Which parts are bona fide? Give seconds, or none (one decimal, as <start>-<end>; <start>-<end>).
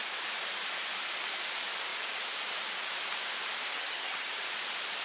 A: 0.0-3.7; 4.4-5.0